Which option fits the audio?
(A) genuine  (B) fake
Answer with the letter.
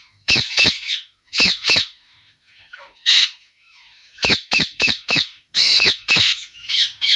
B